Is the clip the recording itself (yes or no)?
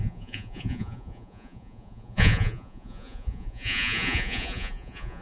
no